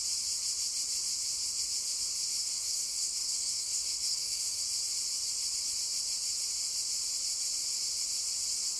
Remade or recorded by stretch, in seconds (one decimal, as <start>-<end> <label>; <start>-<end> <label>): 0.0-2.4 recorded; 2.4-4.6 remade; 4.6-8.8 recorded